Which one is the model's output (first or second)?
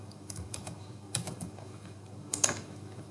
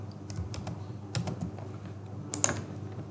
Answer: first